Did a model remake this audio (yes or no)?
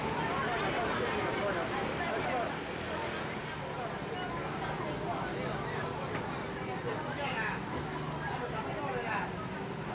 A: no